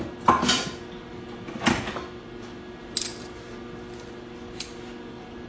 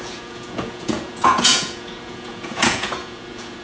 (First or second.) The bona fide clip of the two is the first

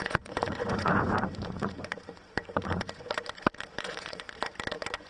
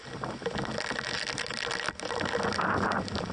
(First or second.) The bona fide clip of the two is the second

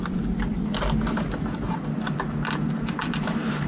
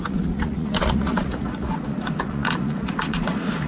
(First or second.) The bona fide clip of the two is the first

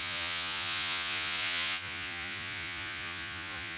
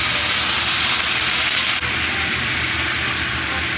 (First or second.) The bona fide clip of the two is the second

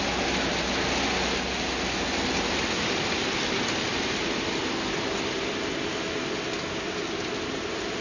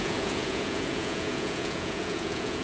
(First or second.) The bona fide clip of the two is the first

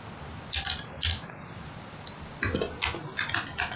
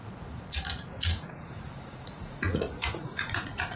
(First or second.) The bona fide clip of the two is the first